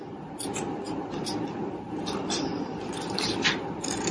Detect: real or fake fake